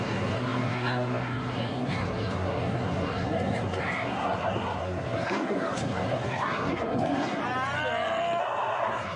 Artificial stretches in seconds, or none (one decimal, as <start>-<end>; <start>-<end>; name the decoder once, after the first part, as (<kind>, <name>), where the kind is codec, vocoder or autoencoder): 0.0-7.4 (codec, SNAC); 8.4-9.2

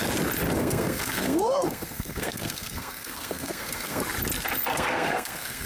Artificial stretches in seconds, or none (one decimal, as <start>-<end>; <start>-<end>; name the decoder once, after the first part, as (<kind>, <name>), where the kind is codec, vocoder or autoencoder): 0.6-4.0 (codec, SNAC); 4.7-5.7

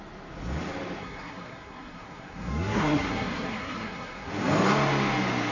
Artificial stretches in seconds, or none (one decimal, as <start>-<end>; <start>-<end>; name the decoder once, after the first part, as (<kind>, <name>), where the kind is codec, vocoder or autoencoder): 1.0-4.3 (codec, SNAC)

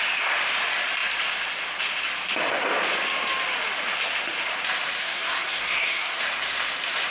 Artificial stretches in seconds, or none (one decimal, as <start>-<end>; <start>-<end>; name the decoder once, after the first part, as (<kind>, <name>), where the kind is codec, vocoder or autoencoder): 5.0-6.2 (codec, SNAC)

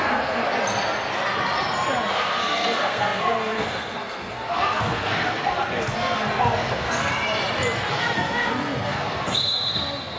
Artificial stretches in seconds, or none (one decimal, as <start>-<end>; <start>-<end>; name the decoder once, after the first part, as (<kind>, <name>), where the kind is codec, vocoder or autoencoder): 0.0-0.4 (codec, SNAC); 2.1-7.1; 7.9-10.2

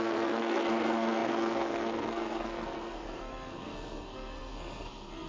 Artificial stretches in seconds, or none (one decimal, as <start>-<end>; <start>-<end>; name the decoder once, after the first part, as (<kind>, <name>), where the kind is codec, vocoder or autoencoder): 0.0-5.3 (codec, SNAC)